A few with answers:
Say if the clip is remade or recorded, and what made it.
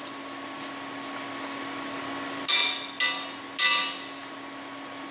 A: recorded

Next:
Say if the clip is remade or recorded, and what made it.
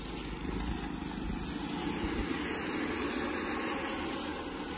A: recorded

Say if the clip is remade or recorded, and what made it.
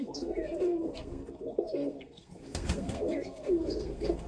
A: remade, codec, SNAC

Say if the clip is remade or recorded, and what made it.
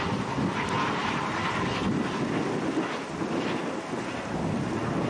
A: recorded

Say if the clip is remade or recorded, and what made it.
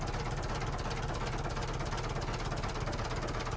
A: recorded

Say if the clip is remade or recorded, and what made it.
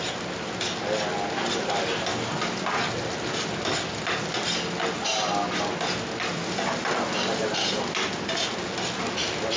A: recorded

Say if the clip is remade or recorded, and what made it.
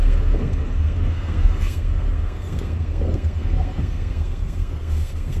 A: remade, codec, SNAC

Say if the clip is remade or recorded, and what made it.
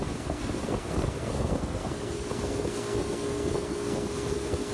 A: remade, codec, SNAC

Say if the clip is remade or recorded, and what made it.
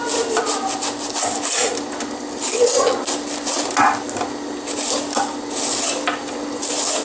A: recorded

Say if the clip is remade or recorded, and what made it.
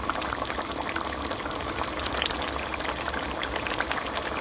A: recorded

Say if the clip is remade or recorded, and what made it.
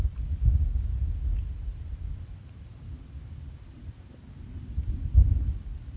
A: recorded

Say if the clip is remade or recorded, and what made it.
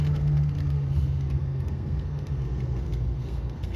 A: remade, codec, SNAC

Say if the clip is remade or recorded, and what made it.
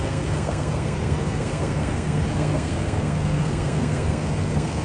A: remade, codec, SNAC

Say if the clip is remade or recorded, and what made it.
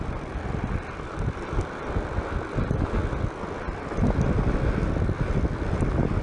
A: recorded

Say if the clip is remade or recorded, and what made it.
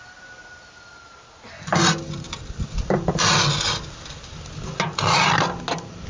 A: recorded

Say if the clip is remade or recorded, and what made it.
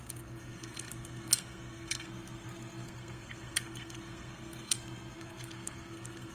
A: remade, codec, SNAC